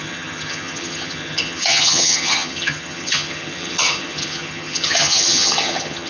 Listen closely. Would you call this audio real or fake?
fake